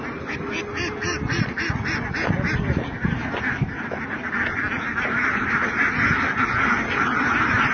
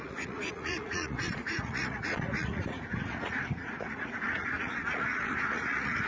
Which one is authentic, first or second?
first